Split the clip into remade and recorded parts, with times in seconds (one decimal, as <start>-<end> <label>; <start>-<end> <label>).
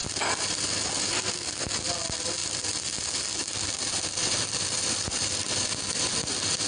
0.0-2.4 recorded; 2.4-6.7 remade